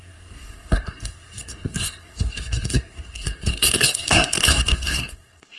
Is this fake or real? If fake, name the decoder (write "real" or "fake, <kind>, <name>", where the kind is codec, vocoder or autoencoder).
fake, codec, SNAC